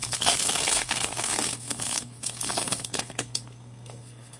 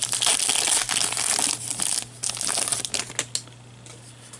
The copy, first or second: first